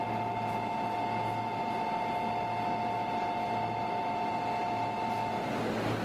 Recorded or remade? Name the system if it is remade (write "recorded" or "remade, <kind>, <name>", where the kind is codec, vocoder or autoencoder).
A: recorded